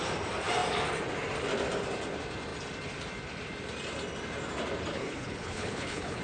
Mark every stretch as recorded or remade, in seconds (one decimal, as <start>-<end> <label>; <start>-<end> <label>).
0.0-4.9 recorded; 4.9-6.2 remade